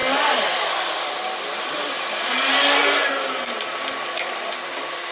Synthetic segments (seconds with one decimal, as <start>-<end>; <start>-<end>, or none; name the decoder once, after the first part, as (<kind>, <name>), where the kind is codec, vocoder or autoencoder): none